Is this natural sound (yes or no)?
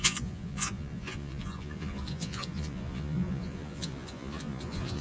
no